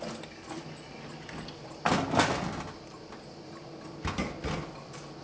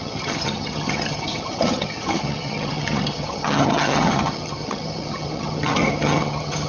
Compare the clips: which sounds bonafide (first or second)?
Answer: first